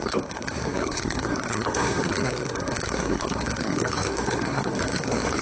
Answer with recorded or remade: remade